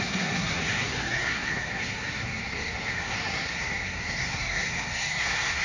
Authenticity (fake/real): fake